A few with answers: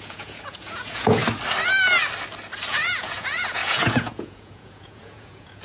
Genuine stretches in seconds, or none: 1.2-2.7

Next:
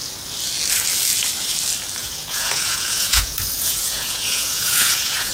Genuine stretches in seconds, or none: 0.0-2.0

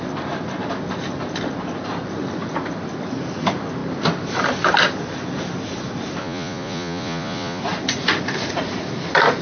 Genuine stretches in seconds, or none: 0.0-6.2; 7.6-9.4

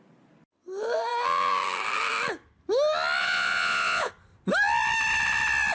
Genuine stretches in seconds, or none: 0.0-3.2; 4.1-5.7

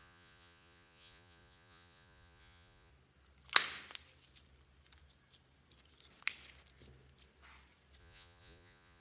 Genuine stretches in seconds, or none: 2.9-8.0